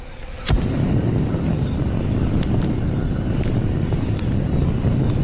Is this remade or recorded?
recorded